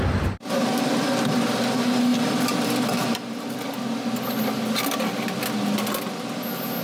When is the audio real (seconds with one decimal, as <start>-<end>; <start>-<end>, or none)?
0.0-6.8